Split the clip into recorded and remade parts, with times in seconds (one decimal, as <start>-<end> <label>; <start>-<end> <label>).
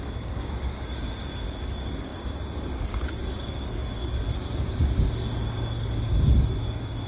0.0-7.1 remade